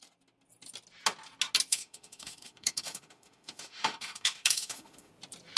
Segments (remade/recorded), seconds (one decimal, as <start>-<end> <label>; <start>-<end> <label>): 0.0-1.7 recorded; 1.7-5.1 remade; 5.1-5.6 recorded